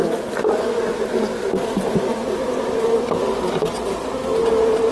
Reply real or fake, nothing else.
real